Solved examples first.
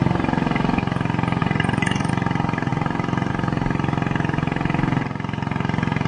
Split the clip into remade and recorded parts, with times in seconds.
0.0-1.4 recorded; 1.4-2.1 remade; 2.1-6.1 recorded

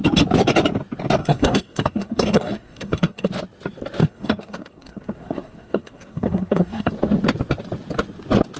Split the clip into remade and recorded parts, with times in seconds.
0.0-1.2 recorded; 1.2-3.3 remade; 3.3-4.0 recorded; 4.0-6.9 remade; 6.9-8.6 recorded

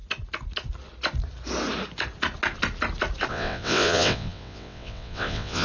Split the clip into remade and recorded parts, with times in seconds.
0.0-3.3 recorded; 3.3-5.6 remade

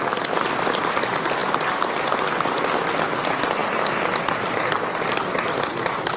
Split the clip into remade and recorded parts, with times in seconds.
0.0-6.2 recorded

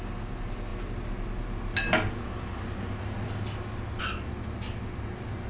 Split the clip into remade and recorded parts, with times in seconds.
0.0-5.5 recorded